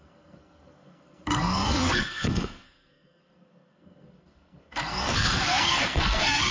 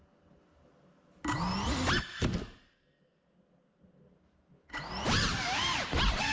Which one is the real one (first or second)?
second